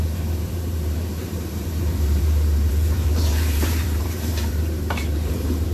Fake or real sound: fake